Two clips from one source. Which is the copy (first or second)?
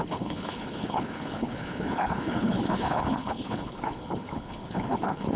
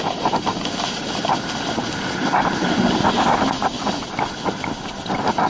first